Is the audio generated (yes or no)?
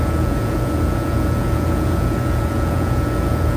yes